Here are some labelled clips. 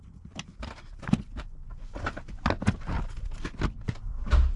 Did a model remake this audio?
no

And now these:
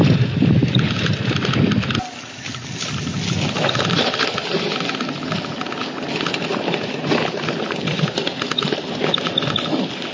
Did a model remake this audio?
no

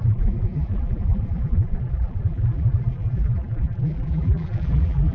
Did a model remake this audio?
yes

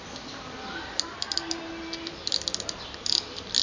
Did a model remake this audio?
no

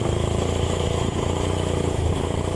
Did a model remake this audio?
yes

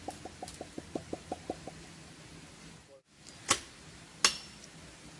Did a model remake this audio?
no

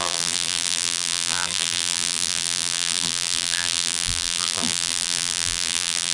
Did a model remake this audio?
yes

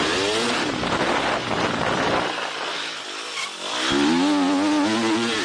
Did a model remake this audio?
no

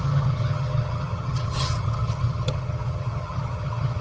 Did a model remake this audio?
yes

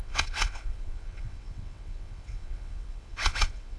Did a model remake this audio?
yes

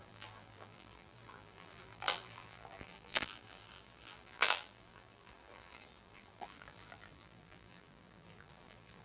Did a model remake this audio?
yes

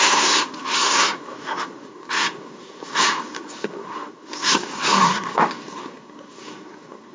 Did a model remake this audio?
yes